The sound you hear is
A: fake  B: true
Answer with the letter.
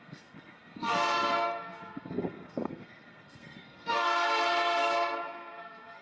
A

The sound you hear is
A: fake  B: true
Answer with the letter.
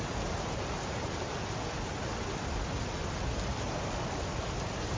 B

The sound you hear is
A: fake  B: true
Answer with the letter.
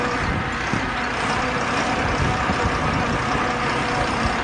B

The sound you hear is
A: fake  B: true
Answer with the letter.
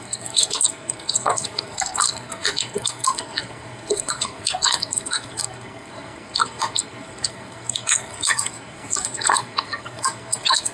A